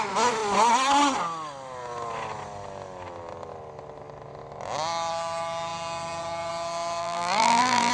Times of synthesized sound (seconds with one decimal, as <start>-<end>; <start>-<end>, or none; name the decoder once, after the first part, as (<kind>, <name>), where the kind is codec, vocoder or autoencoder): 7.0-7.9 (vocoder, BigVGAN v2)